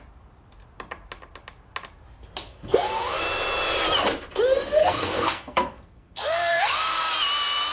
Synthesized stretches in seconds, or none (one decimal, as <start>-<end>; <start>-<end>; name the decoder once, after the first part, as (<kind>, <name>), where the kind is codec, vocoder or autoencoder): 2.5-3.2 (codec, SNAC); 4.8-7.1